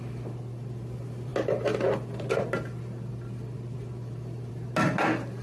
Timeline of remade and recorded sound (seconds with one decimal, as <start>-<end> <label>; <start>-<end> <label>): 0.0-5.4 recorded